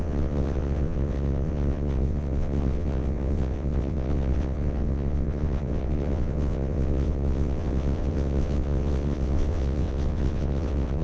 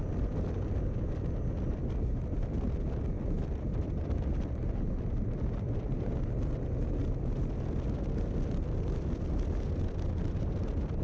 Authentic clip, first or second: second